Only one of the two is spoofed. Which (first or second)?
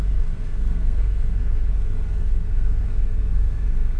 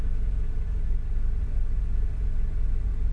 first